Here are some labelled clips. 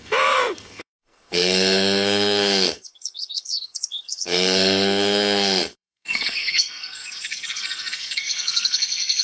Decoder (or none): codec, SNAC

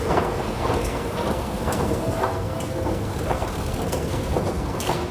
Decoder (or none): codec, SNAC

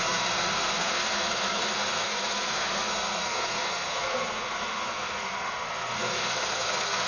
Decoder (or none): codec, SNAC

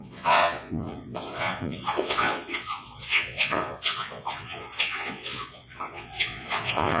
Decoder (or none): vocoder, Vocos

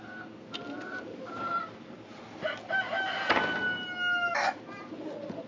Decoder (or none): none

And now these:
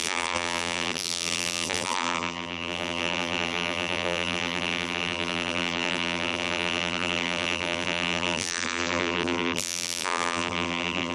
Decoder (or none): vocoder, BigVGAN v2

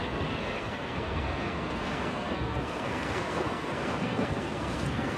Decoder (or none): codec, SNAC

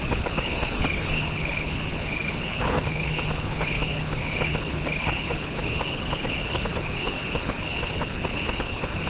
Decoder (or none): codec, HILCodec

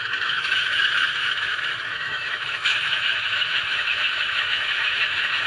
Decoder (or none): autoencoder, DAC-VAE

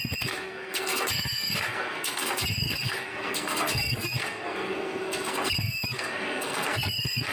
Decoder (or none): codec, SNAC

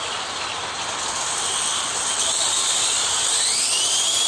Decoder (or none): none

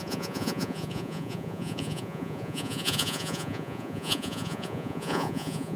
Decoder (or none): vocoder, Vocos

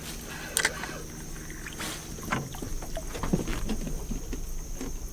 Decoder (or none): none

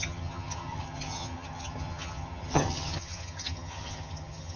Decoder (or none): vocoder, HiFi-GAN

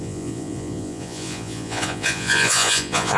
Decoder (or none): vocoder, Vocos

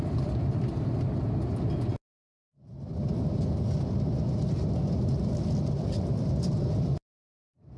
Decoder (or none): vocoder, BigVGAN v2